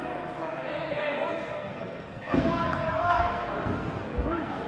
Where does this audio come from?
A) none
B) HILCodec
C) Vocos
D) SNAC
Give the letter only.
D